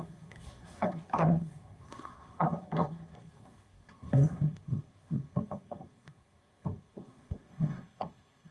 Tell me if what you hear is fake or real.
fake